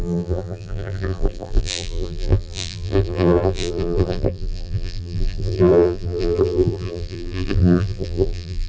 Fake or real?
fake